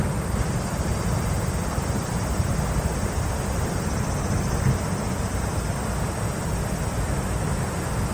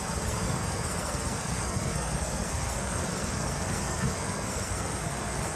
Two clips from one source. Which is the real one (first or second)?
first